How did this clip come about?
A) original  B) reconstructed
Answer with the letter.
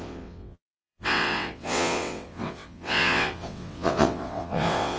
B